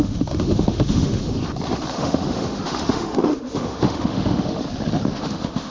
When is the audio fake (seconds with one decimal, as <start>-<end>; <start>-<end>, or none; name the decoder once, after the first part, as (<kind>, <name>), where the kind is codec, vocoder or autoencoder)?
0.0-1.2 (autoencoder, DAC-VAE); 1.9-4.6; 5.2-5.7